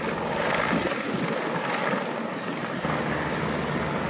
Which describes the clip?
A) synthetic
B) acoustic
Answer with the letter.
B